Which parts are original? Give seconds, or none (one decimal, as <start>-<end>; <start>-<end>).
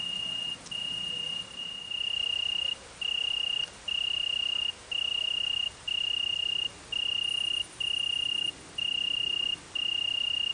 0.0-10.5